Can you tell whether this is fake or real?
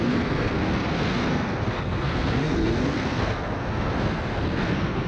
fake